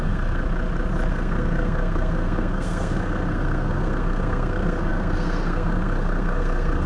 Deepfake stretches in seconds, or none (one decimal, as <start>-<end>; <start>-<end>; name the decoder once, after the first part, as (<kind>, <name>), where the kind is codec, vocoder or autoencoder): 0.0-0.4 (codec, SNAC); 1.1-6.9